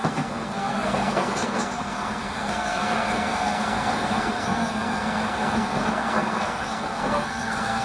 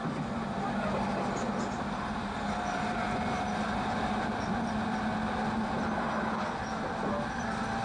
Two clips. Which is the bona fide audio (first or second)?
second